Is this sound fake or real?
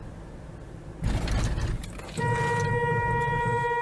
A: real